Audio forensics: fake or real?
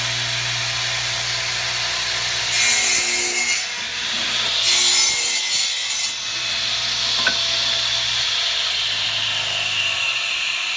real